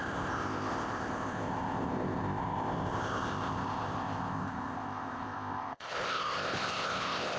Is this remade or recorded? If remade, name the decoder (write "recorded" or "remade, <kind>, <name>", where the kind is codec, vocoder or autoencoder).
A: remade, codec, ZipCodec